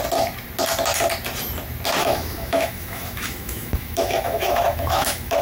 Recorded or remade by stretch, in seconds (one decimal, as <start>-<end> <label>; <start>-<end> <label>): 0.0-2.0 recorded; 2.0-5.4 remade